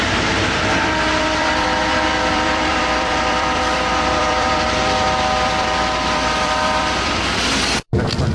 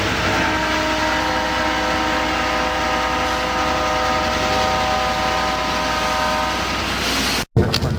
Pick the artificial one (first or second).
first